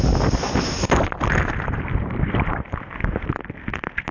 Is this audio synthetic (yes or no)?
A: no